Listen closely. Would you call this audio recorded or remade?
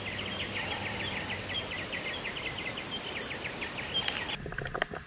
recorded